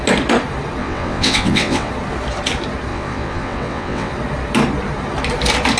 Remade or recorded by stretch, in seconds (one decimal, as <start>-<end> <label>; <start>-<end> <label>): 0.0-0.8 recorded; 0.8-1.9 remade; 1.9-2.9 recorded; 2.9-4.1 remade; 4.1-5.8 recorded